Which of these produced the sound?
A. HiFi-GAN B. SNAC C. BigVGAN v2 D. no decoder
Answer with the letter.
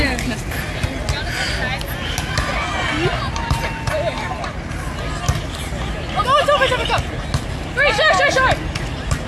D